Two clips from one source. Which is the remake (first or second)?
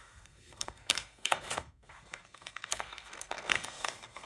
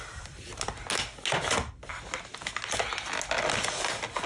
first